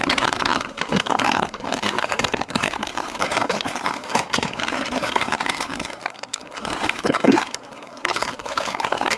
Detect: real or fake fake